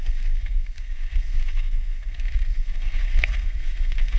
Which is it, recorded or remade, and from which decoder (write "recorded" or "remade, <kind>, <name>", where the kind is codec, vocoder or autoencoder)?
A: remade, codec, SNAC